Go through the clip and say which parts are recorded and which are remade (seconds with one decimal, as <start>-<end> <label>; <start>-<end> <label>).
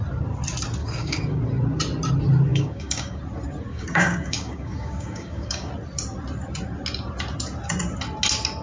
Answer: 0.0-0.8 recorded; 0.8-1.4 remade; 1.4-2.5 recorded; 2.5-3.2 remade; 3.2-3.7 recorded; 3.7-5.7 remade; 5.7-8.6 recorded